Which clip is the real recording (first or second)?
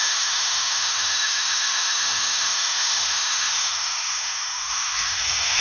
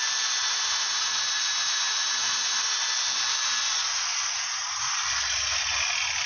second